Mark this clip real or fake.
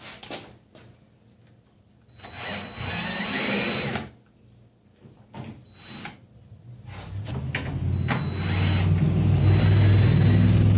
real